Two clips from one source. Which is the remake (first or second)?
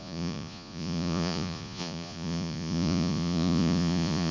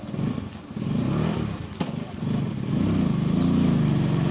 first